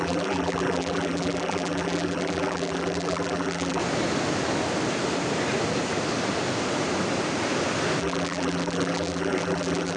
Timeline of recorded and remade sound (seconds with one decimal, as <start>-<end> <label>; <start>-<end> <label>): 0.0-3.8 remade; 3.8-8.0 recorded; 8.0-10.0 remade